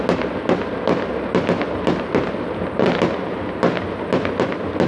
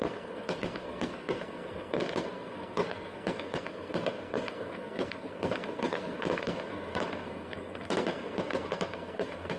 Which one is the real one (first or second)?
first